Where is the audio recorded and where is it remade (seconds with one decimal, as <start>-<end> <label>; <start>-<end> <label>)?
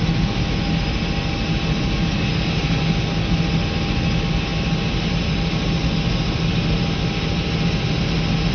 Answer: 0.0-8.5 recorded